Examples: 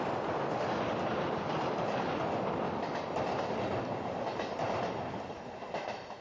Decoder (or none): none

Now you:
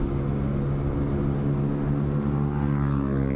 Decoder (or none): none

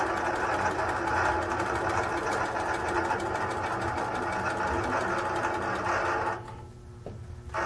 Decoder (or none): none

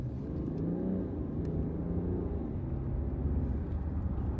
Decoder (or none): none